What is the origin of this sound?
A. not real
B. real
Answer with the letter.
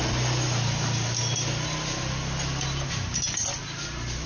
B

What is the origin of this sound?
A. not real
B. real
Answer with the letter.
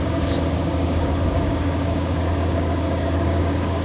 A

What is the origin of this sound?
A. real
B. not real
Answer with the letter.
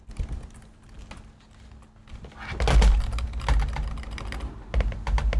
A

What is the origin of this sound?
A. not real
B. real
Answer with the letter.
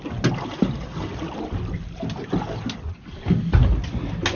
B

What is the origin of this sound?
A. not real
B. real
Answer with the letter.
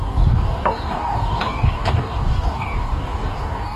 A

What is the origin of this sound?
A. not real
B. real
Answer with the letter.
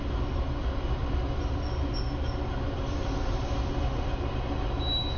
B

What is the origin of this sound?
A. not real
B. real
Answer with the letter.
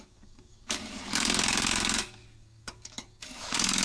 A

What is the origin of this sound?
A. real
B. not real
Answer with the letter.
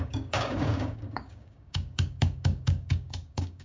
B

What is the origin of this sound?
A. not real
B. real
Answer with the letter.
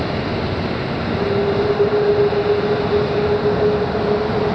B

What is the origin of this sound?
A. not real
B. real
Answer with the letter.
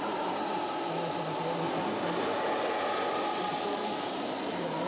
B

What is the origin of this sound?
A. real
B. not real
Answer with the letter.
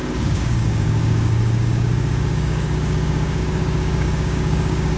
B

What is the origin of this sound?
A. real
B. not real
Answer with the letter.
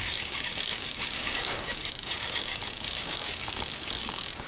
B